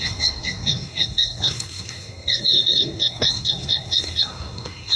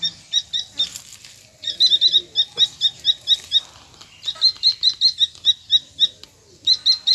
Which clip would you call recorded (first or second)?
second